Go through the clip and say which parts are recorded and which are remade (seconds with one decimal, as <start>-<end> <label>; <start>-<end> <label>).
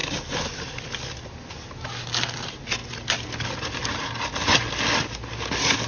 0.0-5.9 recorded